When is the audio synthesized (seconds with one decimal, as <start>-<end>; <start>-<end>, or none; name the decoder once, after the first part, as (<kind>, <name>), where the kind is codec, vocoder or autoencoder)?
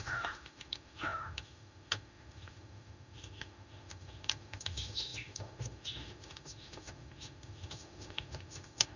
0.0-9.0 (autoencoder, DAC-VAE)